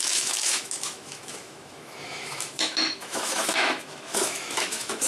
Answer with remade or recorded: remade